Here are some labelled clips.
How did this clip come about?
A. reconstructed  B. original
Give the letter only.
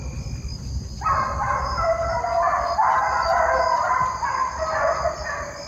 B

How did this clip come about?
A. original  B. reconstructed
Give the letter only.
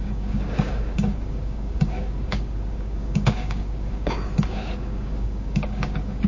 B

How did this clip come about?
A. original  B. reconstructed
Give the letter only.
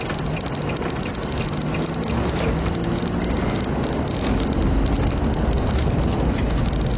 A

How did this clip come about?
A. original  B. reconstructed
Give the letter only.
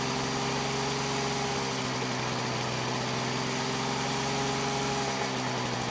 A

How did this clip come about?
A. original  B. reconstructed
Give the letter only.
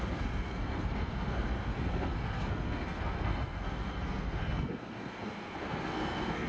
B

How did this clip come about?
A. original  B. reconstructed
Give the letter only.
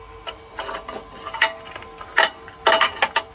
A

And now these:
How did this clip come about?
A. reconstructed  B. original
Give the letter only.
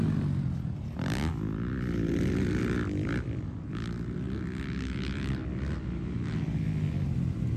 B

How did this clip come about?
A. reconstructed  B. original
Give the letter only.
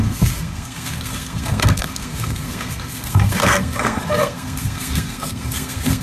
A